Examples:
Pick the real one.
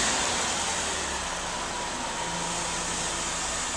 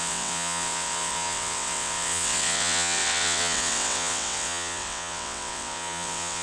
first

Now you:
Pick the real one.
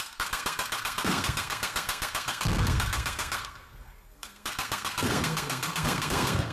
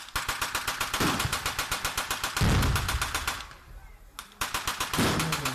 second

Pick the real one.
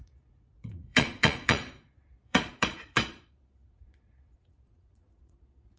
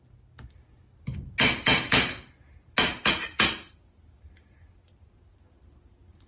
second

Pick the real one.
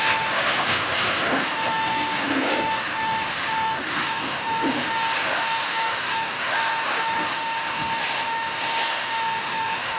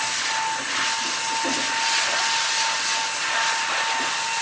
second